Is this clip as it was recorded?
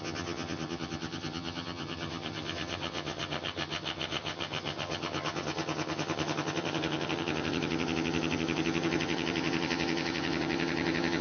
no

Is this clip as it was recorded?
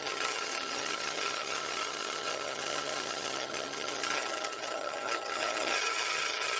no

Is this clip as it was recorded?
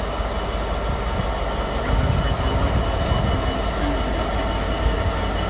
yes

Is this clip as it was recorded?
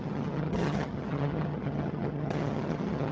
no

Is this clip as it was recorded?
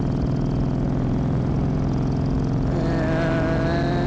yes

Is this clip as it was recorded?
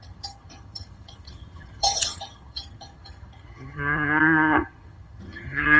no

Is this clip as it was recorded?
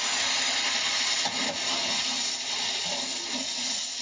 yes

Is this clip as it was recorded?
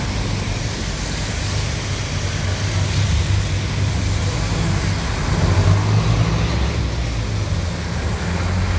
yes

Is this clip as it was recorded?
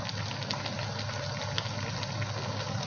yes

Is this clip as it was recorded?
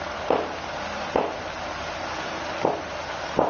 yes